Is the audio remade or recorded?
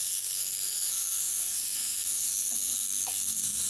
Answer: remade